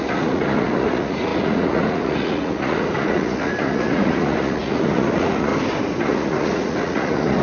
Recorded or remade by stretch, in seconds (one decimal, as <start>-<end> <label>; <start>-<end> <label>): 0.0-5.5 remade; 5.5-6.0 recorded; 6.0-7.4 remade